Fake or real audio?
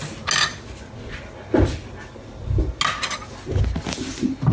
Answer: real